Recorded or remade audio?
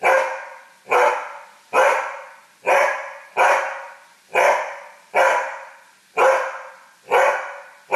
recorded